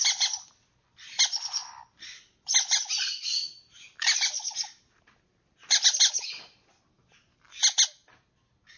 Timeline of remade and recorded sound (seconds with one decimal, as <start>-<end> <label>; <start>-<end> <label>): 0.0-8.8 recorded